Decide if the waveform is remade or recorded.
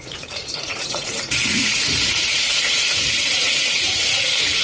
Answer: remade